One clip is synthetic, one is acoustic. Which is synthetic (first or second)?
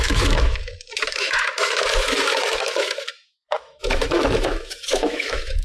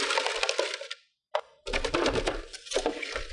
first